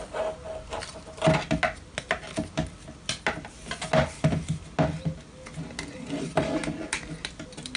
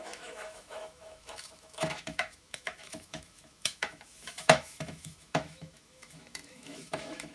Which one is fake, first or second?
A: second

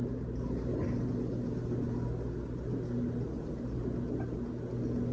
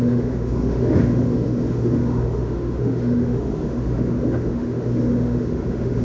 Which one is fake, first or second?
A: second